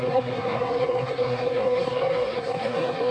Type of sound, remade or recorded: remade